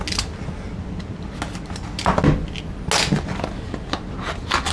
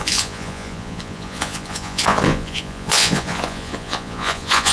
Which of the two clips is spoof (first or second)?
second